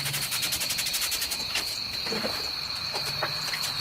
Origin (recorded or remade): recorded